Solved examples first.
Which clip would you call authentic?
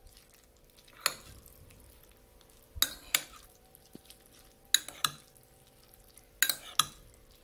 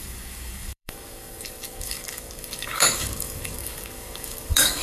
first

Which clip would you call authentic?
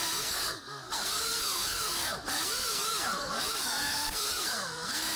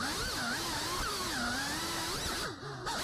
second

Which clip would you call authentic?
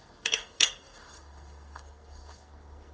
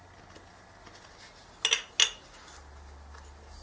second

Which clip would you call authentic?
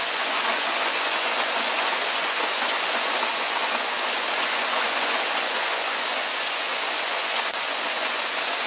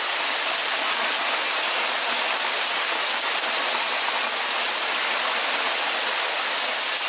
second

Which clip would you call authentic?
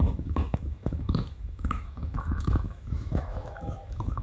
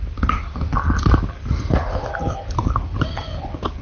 second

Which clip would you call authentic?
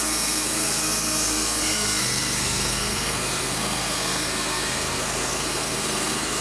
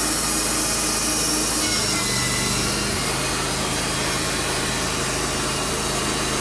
second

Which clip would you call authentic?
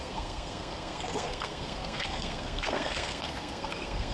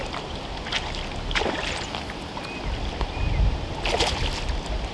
second